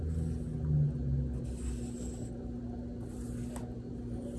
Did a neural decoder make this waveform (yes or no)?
no